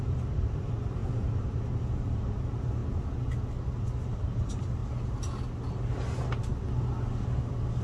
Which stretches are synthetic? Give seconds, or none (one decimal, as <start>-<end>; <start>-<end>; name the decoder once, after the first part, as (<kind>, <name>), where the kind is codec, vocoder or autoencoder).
0.0-2.8 (vocoder, BigVGAN v2); 4.0-4.8